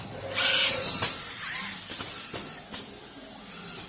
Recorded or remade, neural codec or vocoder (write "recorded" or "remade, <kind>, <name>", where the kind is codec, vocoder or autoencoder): recorded